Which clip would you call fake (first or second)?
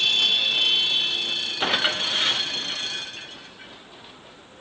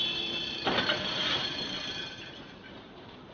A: second